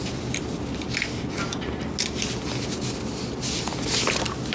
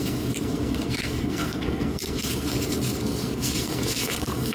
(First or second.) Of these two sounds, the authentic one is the first